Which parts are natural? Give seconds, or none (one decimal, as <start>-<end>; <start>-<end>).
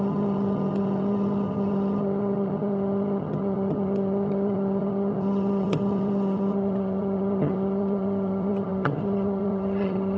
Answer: none